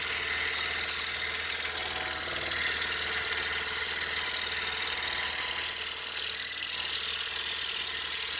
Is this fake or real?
real